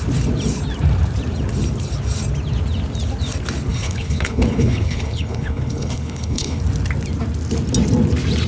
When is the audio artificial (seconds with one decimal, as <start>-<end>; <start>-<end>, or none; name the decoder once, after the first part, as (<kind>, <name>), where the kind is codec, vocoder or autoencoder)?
3.7-6.6 (codec, HILCodec)

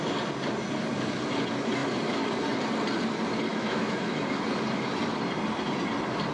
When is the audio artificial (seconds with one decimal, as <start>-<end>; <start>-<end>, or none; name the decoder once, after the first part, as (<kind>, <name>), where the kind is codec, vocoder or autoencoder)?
3.5-4.2 (autoencoder, DAC-VAE)

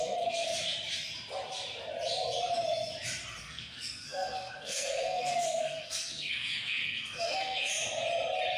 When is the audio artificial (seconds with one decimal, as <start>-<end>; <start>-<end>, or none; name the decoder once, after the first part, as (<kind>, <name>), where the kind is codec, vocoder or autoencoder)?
0.0-0.5 (codec, SNAC); 3.4-7.7

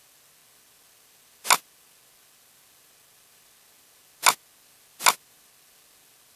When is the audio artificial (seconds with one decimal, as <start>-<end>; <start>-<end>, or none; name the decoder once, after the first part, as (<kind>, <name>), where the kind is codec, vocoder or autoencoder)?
none

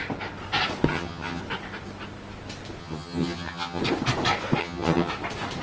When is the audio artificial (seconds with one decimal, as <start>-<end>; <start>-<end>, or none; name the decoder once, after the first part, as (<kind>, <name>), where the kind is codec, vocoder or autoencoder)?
0.9-1.4 (vocoder, HiFi-GAN); 2.8-3.8; 4.6-5.1

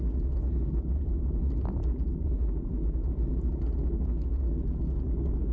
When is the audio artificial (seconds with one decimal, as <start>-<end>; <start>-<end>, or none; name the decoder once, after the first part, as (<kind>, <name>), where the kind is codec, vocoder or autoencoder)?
0.4-3.6 (vocoder, BigVGAN v2)

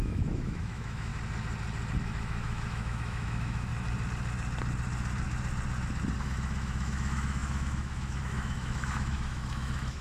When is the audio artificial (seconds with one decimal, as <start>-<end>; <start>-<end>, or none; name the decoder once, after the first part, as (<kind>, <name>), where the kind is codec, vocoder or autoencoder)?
0.0-1.1 (autoencoder, DAC-VAE); 2.0-3.7; 6.2-10.0

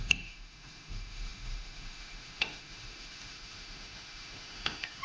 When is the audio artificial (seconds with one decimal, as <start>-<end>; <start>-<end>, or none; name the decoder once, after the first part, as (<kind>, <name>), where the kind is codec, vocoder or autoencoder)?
0.0-5.0 (autoencoder, DAC-VAE)